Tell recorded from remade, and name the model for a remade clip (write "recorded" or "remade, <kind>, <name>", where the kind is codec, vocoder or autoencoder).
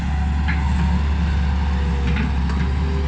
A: recorded